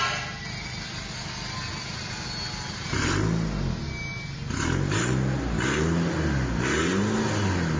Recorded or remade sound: recorded